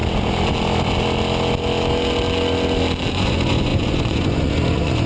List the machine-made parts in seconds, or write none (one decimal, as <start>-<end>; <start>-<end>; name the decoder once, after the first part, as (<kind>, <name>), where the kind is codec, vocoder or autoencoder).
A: 3.1-5.1 (vocoder, Vocos)